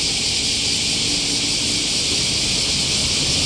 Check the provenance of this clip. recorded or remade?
recorded